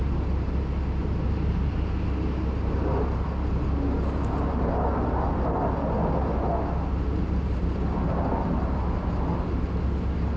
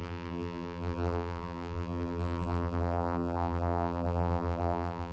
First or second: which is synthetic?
second